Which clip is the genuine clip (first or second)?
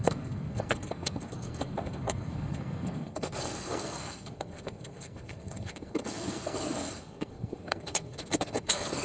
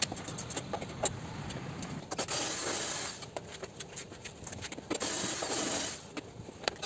second